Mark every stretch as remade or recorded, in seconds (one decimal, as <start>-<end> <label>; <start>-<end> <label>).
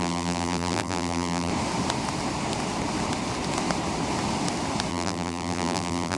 0.0-1.5 remade; 1.5-4.9 recorded; 4.9-6.2 remade